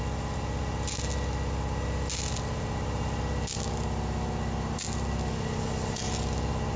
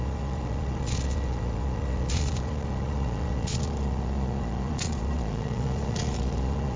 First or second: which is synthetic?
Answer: second